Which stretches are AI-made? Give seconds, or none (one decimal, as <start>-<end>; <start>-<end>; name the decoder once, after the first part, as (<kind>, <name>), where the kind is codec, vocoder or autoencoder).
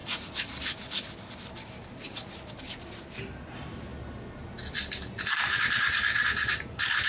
none